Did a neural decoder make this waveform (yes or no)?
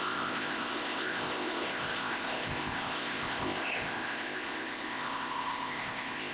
yes